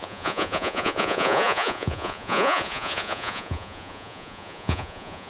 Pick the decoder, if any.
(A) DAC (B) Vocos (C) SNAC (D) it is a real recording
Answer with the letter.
B